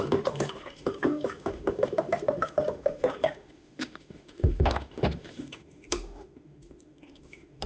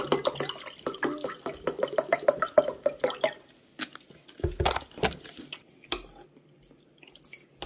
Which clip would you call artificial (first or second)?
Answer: first